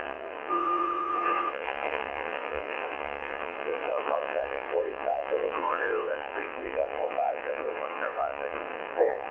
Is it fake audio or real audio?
fake